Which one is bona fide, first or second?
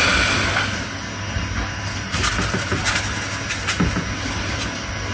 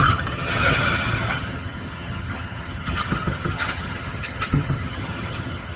first